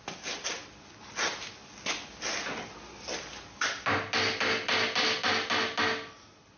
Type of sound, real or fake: real